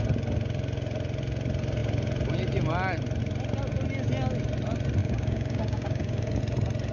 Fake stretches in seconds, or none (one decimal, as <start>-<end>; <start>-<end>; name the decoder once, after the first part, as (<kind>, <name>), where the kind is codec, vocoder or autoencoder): 5.0-6.4 (codec, DAC)